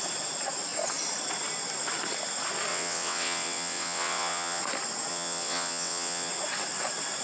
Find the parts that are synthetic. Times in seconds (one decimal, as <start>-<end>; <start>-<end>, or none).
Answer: 2.7-4.6; 5.1-6.3

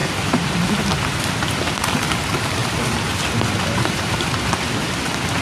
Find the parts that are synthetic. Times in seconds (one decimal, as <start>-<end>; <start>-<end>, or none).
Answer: 0.0-0.7; 2.6-4.3